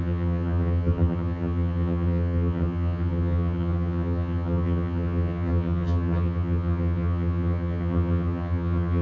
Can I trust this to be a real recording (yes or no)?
no